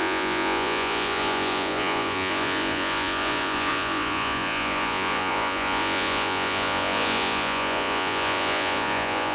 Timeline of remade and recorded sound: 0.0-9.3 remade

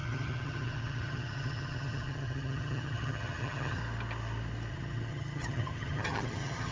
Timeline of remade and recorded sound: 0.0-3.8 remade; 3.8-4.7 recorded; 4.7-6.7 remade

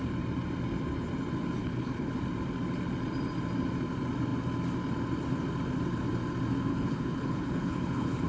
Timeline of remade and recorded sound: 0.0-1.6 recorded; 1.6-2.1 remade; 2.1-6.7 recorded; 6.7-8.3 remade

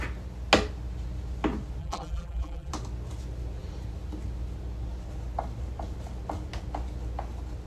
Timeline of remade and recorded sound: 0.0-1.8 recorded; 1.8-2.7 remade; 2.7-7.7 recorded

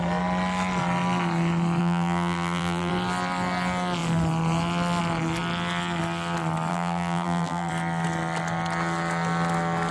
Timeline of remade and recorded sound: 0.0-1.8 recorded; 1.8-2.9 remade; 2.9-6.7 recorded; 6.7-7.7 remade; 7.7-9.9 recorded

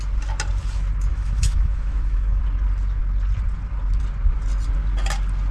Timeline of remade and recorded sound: 0.0-1.1 recorded; 1.1-2.4 remade; 2.4-5.5 recorded